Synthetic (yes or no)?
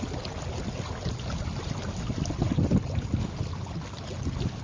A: no